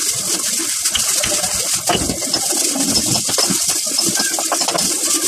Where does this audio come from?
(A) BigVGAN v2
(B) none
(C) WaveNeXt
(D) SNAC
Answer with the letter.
B